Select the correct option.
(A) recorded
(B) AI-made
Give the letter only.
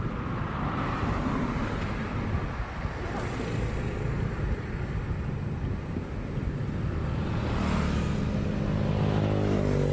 A